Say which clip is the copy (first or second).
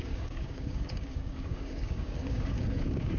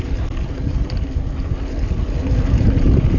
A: first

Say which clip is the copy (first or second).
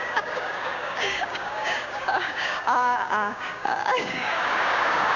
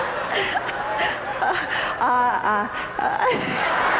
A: first